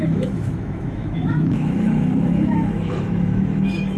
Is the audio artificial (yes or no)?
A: yes